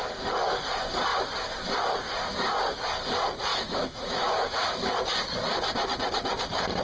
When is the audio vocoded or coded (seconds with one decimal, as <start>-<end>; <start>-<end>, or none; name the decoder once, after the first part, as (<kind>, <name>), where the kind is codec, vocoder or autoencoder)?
3.5-4.9 (autoencoder, DAC-VAE)